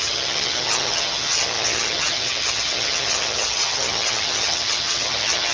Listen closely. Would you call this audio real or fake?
fake